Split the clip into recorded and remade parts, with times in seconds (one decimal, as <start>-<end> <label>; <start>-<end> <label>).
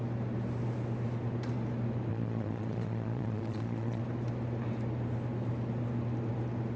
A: 0.0-2.1 recorded; 2.1-4.0 remade; 4.0-6.8 recorded